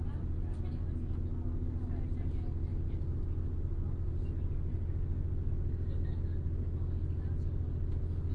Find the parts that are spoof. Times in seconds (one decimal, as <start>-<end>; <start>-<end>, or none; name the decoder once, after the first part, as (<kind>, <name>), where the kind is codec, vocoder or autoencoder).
none